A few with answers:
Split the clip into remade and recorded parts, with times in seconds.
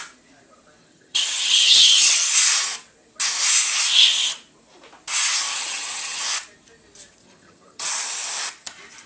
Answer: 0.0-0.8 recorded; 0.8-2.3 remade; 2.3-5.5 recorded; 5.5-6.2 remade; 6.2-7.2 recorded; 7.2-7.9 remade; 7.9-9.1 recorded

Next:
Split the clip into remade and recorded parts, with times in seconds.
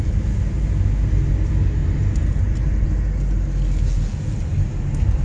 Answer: 0.0-5.2 recorded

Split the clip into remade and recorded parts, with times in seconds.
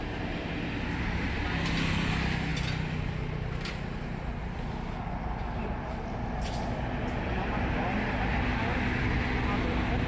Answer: 0.0-10.1 recorded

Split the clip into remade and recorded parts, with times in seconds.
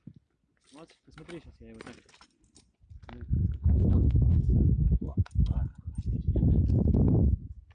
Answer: 0.0-3.4 recorded; 3.4-5.3 remade; 5.3-7.7 recorded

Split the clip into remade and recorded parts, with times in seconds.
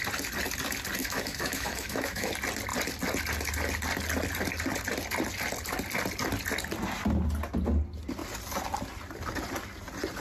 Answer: 0.0-1.0 recorded; 1.0-2.3 remade; 2.3-10.2 recorded